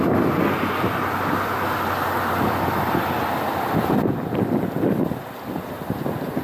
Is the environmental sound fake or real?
real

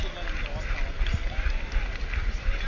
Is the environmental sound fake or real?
real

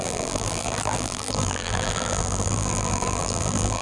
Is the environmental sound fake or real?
fake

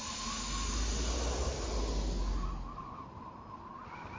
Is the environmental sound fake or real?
real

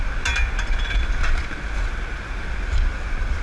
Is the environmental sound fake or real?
real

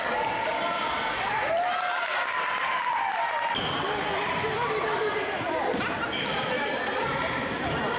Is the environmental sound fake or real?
fake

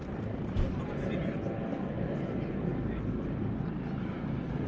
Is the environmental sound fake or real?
real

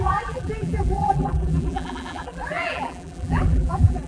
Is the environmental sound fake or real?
fake